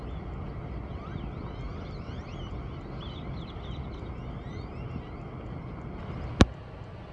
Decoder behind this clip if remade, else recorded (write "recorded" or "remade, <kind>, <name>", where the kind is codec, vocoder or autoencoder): recorded